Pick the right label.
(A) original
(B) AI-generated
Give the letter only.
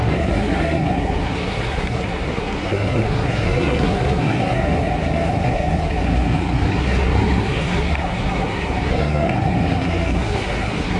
B